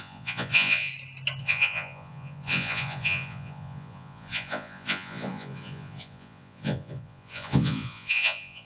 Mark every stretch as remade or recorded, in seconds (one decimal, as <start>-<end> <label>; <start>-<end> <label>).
0.0-0.9 remade; 0.9-1.4 recorded; 1.4-8.6 remade